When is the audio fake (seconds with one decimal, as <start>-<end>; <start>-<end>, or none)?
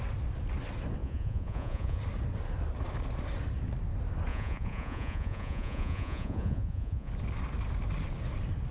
1.0-2.0; 4.3-7.1